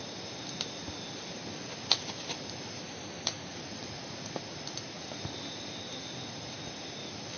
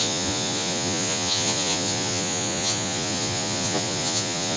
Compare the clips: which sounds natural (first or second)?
first